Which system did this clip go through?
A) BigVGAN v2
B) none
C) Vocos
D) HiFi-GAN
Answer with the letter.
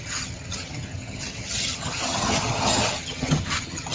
D